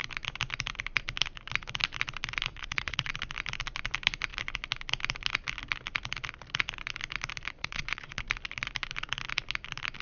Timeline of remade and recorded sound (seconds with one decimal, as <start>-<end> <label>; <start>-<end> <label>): 0.0-2.5 recorded; 2.5-3.1 remade; 3.1-7.6 recorded; 7.6-8.2 remade; 8.2-10.0 recorded